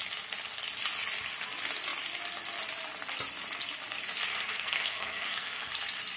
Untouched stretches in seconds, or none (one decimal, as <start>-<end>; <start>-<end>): 0.0-4.3; 5.7-6.2